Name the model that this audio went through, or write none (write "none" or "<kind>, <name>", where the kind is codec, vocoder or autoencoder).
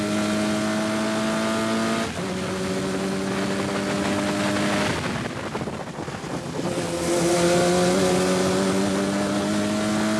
none